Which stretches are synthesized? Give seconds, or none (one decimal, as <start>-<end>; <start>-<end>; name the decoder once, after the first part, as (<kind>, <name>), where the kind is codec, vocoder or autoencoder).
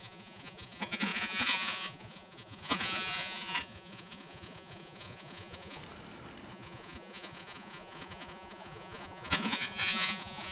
0.0-5.8 (vocoder, Vocos); 6.5-10.5